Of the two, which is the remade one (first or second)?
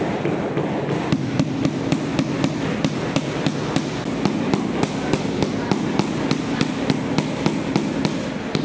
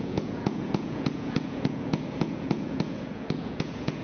second